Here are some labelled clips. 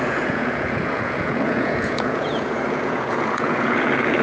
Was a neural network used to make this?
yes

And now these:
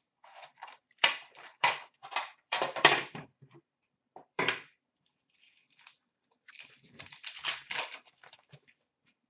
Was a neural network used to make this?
yes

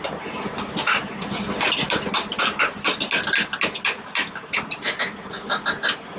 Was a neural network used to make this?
no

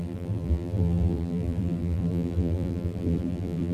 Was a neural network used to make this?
yes